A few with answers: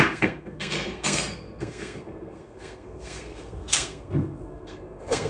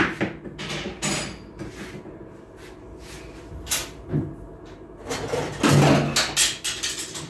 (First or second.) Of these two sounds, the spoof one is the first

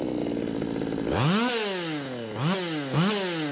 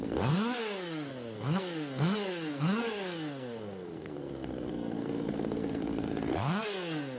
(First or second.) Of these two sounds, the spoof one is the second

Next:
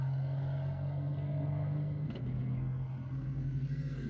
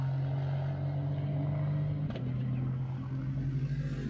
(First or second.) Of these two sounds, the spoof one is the first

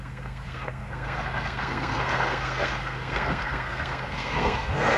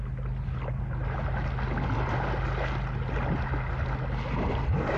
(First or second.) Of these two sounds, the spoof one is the first